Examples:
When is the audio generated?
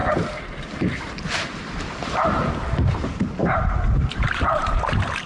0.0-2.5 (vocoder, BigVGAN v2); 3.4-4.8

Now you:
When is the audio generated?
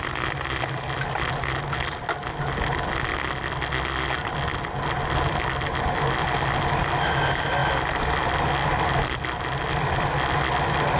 none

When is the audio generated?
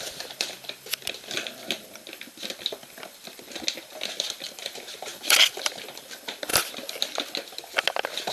5.1-6.1 (vocoder, BigVGAN v2)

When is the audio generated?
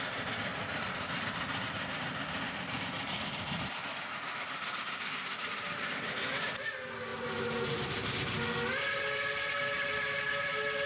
0.5-3.7 (vocoder, BigVGAN v2); 7.1-8.1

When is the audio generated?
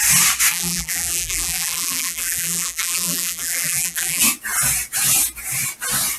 0.5-4.2 (vocoder, BigVGAN v2)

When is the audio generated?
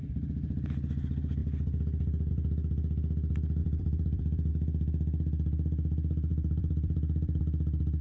1.4-2.3 (vocoder, BigVGAN v2); 3.6-4.5; 6.3-7.4